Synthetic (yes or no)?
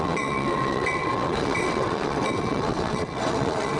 yes